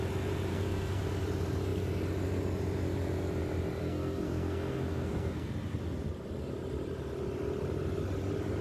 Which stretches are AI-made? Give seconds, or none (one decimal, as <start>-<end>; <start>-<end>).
0.5-1.0; 3.8-5.5